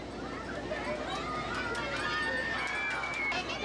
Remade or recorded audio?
recorded